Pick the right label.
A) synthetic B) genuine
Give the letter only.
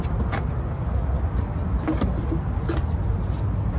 B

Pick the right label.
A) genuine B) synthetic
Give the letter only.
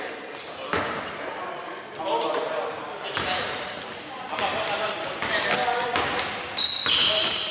A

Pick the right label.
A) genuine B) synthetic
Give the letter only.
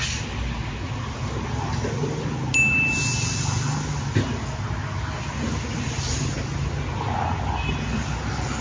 A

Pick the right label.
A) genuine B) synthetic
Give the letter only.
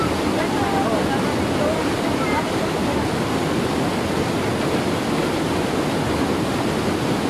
A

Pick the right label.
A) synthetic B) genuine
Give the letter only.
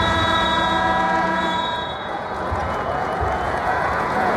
A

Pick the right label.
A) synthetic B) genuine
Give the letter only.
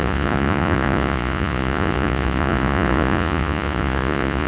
A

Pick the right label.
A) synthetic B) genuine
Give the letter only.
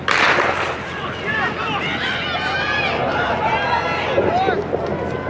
B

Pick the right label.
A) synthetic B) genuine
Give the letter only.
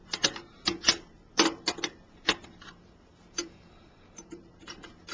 A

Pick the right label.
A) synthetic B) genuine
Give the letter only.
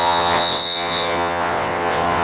A